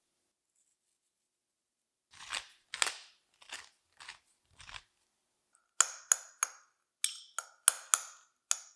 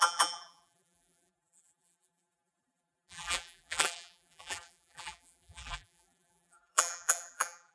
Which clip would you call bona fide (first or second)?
first